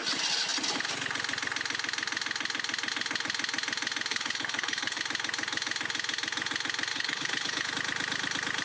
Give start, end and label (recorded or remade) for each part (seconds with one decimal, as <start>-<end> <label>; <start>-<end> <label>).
0.0-4.1 recorded; 4.1-5.0 remade; 5.0-6.9 recorded; 6.9-7.7 remade; 7.7-8.6 recorded